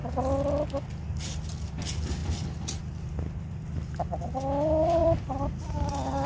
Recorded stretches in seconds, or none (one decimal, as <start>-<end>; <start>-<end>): 0.0-2.2; 2.8-5.0